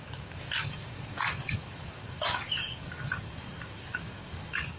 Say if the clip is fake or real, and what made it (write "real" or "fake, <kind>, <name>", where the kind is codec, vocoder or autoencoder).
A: fake, codec, DAC